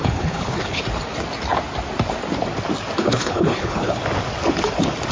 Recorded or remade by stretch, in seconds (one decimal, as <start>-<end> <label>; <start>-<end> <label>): 0.0-0.8 remade; 0.8-3.0 recorded; 3.0-4.0 remade; 4.0-5.1 recorded